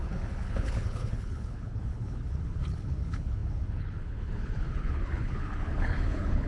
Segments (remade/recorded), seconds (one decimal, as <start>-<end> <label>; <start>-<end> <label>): 0.0-6.5 remade